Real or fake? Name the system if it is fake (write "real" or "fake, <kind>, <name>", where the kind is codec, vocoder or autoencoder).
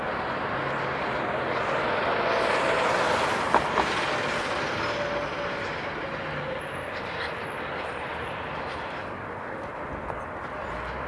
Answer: real